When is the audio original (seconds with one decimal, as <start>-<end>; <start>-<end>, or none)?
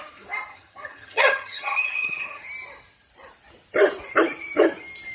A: 0.0-0.5; 2.4-5.1